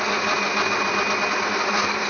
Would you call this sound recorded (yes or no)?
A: yes